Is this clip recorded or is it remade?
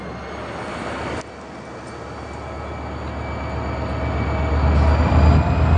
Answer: recorded